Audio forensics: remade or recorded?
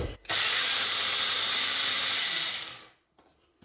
recorded